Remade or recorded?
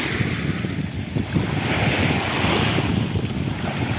recorded